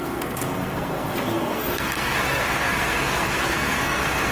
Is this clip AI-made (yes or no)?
yes